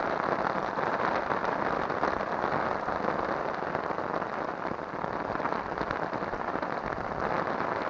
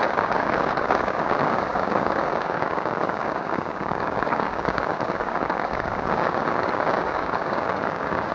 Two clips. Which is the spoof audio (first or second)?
second